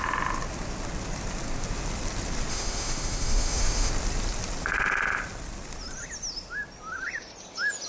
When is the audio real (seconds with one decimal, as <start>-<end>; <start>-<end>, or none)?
0.0-2.5; 3.9-7.9